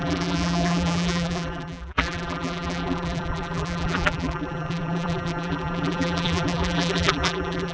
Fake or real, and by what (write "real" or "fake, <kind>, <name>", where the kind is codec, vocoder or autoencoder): fake, vocoder, BigVGAN v2